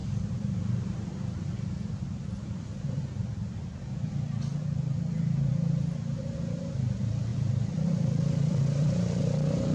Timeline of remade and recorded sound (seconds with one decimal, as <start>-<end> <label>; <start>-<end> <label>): 0.0-4.1 remade; 4.1-4.5 recorded; 4.5-5.5 remade; 5.5-7.3 recorded; 7.3-9.2 remade; 9.2-9.7 recorded